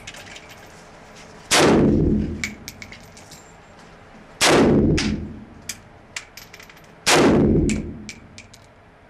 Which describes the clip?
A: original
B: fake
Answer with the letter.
A